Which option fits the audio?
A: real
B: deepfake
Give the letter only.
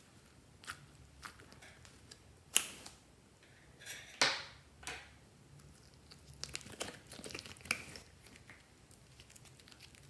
A